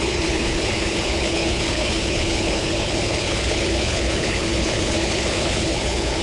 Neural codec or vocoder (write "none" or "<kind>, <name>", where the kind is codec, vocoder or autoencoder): codec, HILCodec